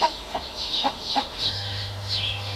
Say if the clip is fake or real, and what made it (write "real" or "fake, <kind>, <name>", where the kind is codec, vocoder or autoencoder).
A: fake, autoencoder, DAC-VAE